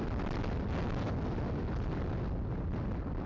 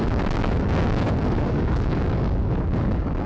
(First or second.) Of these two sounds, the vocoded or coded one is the second